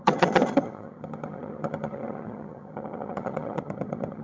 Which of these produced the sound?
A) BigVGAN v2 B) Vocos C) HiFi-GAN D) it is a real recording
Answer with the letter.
C